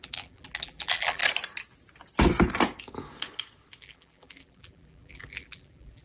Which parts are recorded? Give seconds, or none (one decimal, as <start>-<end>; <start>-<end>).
1.2-3.8